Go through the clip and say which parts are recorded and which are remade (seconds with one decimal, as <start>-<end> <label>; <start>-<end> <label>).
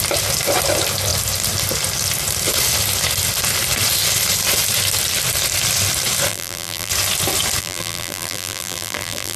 0.0-6.3 recorded; 6.3-6.9 remade; 6.9-7.6 recorded; 7.6-9.4 remade